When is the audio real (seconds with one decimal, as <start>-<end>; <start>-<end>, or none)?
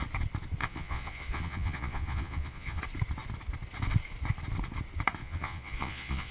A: 0.0-0.6; 2.8-5.2